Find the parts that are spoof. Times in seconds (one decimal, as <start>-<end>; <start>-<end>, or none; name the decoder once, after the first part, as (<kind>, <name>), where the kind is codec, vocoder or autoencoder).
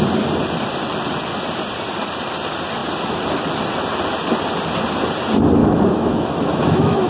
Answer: 5.6-7.1 (autoencoder, DAC-VAE)